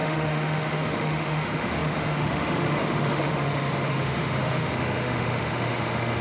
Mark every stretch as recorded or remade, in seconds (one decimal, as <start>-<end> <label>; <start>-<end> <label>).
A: 0.0-6.2 remade